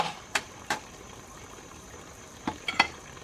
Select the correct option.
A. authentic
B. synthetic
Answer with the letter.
B